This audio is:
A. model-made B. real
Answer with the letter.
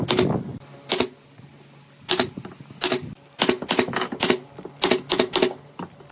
B